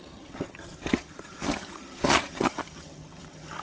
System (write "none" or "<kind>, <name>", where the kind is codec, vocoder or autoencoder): vocoder, HiFi-GAN